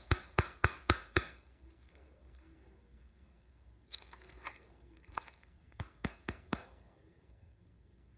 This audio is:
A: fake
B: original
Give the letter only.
A